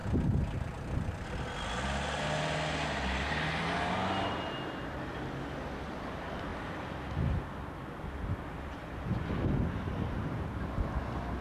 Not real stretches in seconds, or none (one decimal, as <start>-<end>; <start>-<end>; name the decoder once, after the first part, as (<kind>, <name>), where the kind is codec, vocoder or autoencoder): none